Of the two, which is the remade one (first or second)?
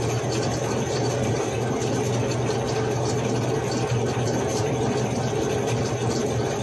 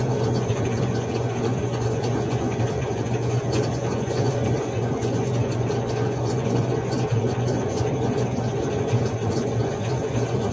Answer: second